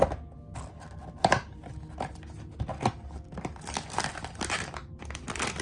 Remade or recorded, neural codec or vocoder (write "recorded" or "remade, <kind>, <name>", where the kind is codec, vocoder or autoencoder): recorded